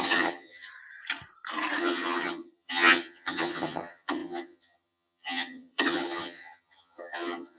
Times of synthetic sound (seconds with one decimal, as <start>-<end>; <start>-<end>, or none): 0.0-0.7; 1.8-7.6